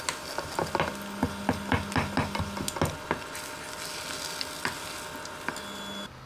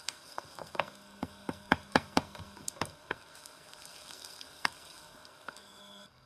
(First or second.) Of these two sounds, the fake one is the second